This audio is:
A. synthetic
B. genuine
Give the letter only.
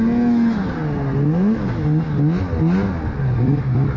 B